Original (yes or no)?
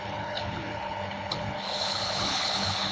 no